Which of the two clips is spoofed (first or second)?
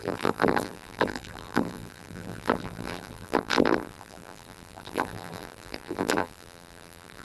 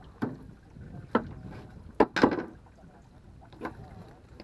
first